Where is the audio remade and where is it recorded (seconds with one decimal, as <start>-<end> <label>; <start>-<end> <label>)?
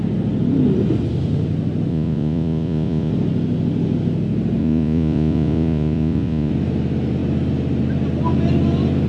0.0-1.9 recorded; 1.9-3.1 remade; 3.1-4.6 recorded; 4.6-6.5 remade; 6.5-9.1 recorded